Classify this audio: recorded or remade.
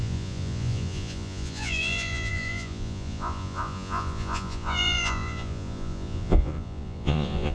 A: remade